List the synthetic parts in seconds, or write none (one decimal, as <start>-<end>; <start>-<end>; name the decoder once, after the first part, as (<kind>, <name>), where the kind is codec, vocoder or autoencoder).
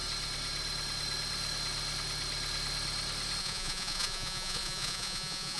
3.4-5.6 (vocoder, Vocos)